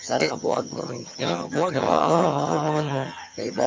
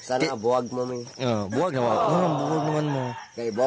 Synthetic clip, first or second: first